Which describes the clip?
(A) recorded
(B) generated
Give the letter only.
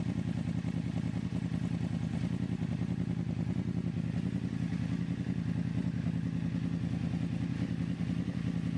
A